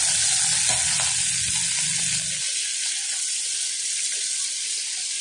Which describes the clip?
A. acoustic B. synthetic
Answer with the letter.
A